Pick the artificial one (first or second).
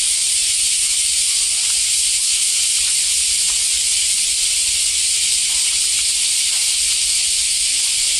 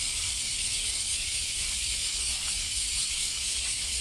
second